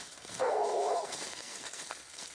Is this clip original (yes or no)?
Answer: no